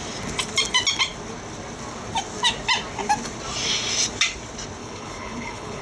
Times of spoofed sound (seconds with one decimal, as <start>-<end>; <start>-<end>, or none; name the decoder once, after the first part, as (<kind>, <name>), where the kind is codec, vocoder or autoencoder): 4.8-5.8 (codec, HILCodec)